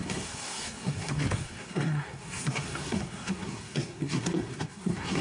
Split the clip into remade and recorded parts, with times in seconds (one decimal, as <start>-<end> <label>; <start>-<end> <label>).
0.0-5.2 remade